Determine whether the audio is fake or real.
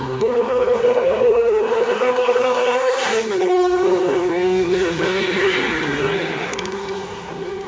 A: fake